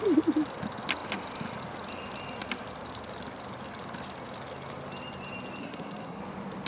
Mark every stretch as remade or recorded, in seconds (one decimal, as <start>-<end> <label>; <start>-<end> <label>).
0.0-5.6 recorded; 5.6-6.2 remade; 6.2-6.7 recorded